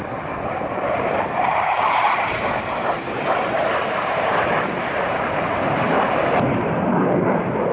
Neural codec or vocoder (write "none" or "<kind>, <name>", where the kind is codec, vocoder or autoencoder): vocoder, BigVGAN v2